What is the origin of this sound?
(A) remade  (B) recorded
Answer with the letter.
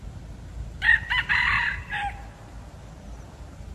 B